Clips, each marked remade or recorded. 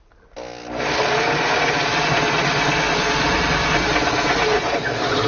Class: recorded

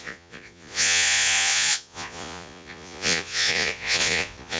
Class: remade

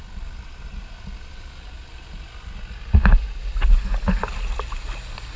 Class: recorded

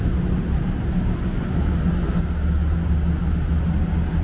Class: recorded